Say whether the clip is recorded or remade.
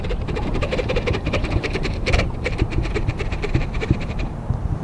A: remade